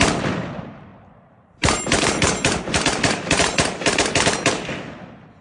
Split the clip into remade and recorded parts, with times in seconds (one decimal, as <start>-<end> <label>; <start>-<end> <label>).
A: 0.0-0.9 recorded; 0.9-4.1 remade; 4.1-5.4 recorded

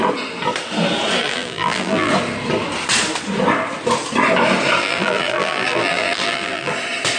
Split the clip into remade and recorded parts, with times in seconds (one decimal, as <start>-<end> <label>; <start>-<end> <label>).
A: 0.0-1.2 recorded; 1.2-2.1 remade; 2.1-4.8 recorded; 4.8-6.7 remade; 6.7-7.2 recorded

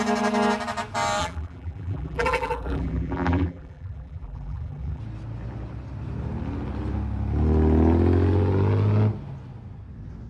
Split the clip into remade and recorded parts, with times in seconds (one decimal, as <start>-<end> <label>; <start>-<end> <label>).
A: 0.0-1.2 recorded; 1.2-5.0 remade; 5.0-10.3 recorded